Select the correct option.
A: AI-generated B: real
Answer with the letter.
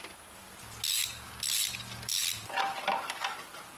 B